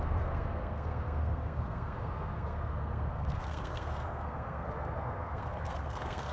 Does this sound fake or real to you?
fake